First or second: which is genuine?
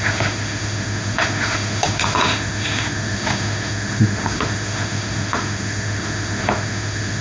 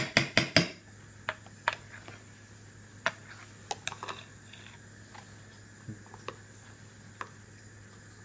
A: second